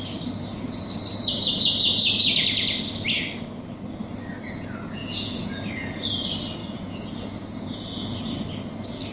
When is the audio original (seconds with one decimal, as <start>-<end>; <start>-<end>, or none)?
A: 0.0-5.0; 5.7-6.6; 8.2-9.1